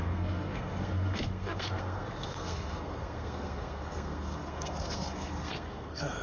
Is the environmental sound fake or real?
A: fake